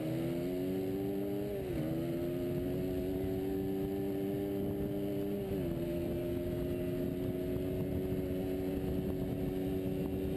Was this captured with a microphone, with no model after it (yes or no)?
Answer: yes